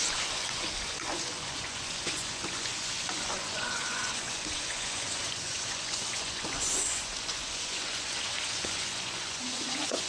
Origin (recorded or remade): remade